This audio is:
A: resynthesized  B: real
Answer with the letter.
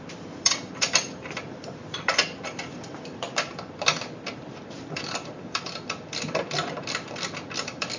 A